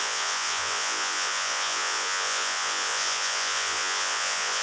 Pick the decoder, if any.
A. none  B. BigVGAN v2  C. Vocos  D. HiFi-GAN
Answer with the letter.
C